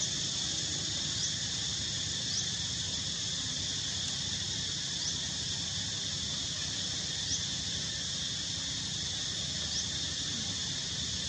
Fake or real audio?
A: real